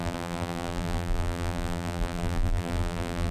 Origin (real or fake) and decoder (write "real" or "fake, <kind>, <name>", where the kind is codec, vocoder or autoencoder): fake, vocoder, BigVGAN v2